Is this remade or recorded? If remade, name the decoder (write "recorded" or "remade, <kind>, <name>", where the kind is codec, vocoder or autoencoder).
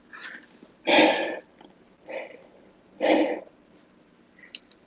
recorded